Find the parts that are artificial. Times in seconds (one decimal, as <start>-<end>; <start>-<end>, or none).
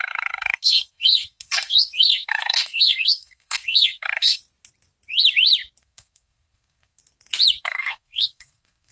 0.0-4.4; 5.8-7.0; 7.6-8.9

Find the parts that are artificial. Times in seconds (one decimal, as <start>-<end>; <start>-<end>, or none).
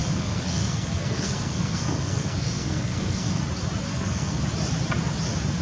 0.0-3.4; 3.9-4.4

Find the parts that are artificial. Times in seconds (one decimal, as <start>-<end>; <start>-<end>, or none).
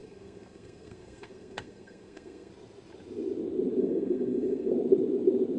0.0-2.5; 3.8-4.7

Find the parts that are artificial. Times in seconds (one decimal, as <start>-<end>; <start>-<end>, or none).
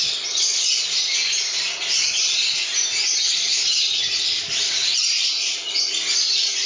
none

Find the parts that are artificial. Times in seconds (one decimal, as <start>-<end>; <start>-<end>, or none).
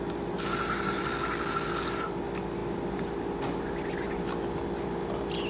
none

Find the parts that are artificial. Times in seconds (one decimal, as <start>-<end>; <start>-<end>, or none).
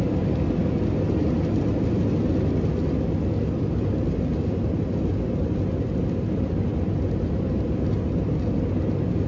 none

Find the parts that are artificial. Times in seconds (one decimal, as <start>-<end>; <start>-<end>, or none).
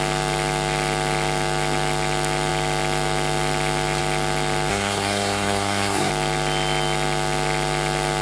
4.7-6.1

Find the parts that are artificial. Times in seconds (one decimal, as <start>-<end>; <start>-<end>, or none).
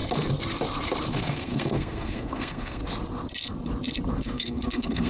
1.1-2.8; 4.2-5.1